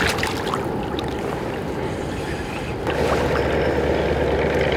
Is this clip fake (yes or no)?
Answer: no